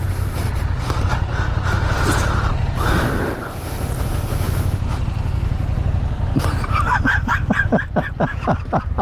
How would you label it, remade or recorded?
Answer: recorded